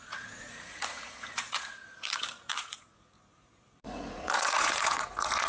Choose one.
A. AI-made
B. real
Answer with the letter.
A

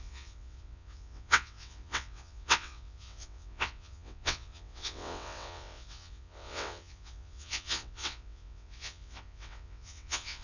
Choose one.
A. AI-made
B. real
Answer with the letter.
A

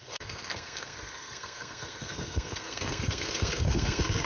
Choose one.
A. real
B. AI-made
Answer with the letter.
B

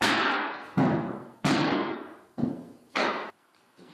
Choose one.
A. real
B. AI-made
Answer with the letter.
B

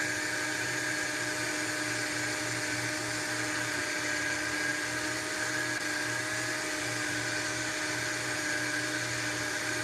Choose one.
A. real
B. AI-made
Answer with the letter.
A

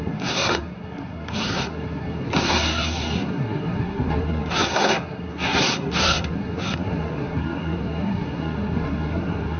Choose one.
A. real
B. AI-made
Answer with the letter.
B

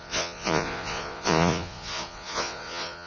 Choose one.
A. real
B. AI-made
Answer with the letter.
B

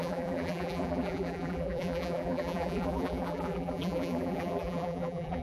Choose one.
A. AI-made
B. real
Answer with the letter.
A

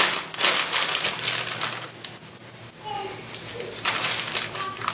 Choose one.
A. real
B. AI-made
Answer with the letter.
A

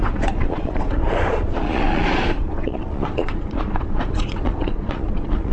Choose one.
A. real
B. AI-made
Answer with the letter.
B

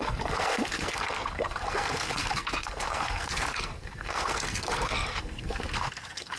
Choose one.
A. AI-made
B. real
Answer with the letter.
A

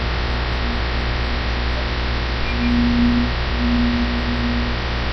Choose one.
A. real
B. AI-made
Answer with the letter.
A